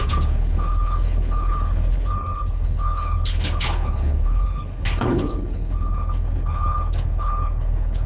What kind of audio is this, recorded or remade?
remade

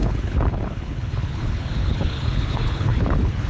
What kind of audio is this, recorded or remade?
remade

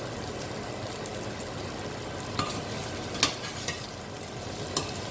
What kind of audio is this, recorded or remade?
recorded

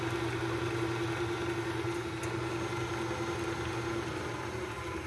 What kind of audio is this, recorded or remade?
recorded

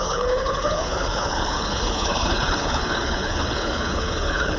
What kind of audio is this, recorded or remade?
remade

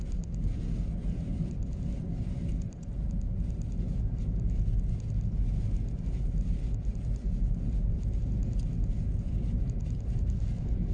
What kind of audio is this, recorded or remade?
recorded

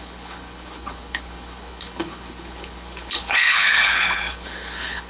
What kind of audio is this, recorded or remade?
remade